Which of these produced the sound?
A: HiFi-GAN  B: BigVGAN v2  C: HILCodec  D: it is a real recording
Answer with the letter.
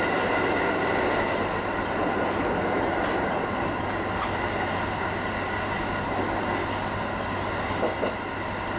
D